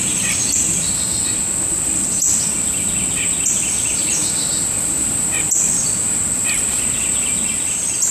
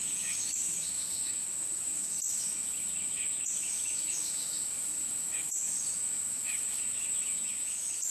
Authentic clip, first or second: first